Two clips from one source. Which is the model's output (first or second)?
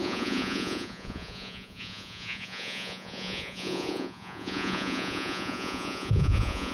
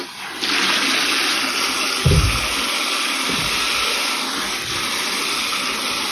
first